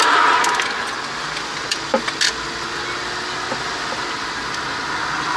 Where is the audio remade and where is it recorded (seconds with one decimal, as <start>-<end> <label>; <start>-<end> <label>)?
0.0-5.4 recorded